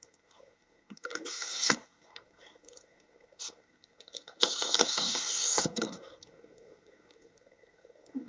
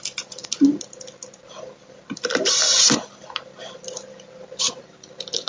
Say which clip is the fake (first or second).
first